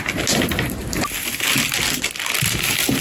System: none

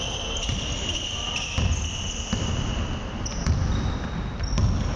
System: none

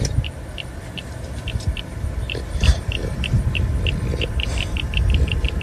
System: vocoder, BigVGAN v2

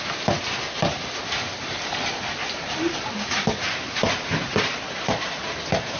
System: none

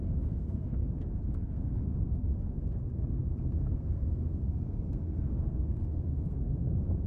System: codec, SNAC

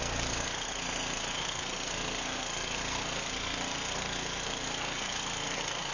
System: codec, SNAC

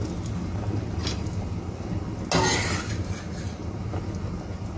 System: none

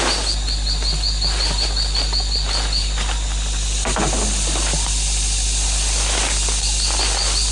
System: none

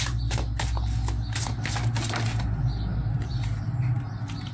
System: none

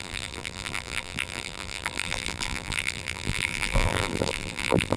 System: vocoder, BigVGAN v2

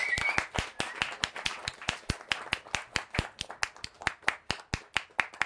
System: none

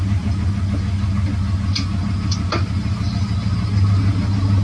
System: none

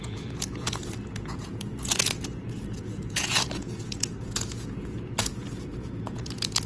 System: vocoder, Vocos